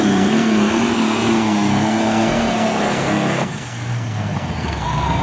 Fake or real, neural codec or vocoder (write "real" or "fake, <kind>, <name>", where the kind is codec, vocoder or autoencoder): fake, codec, SNAC